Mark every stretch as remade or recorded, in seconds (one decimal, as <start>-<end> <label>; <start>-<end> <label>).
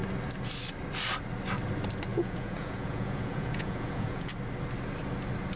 0.0-2.1 recorded; 2.1-4.3 remade; 4.3-5.6 recorded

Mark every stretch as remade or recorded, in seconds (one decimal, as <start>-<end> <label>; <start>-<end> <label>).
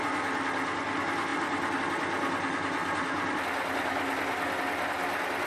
0.0-5.5 recorded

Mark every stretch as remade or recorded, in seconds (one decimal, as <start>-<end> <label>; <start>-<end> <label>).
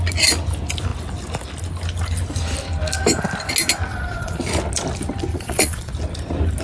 0.0-3.9 recorded; 3.9-4.4 remade; 4.4-5.3 recorded; 5.3-5.9 remade; 5.9-6.6 recorded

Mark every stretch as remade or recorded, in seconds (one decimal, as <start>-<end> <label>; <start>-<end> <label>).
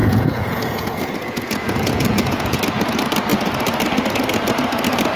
0.0-2.6 remade; 2.6-5.2 recorded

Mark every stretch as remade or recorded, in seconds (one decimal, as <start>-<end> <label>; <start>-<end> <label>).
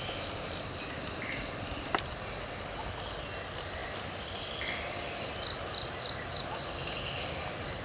0.0-7.8 recorded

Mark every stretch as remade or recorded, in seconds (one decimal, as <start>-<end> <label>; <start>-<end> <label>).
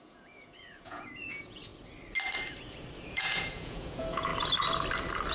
0.0-1.7 remade; 1.7-3.1 recorded; 3.1-4.3 remade; 4.3-5.3 recorded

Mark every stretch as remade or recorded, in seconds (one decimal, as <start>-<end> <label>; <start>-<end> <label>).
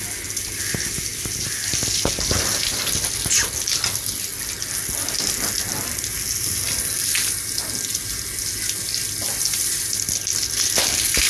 0.0-11.3 recorded